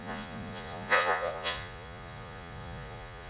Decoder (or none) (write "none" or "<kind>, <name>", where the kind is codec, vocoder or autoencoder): vocoder, Vocos